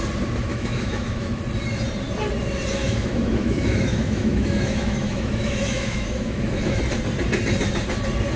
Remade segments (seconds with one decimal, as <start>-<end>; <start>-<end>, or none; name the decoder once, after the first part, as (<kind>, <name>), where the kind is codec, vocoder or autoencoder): 0.5-1.4 (autoencoder, DAC-VAE); 2.8-6.8